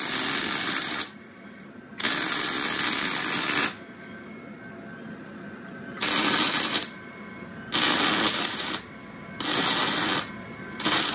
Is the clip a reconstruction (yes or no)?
no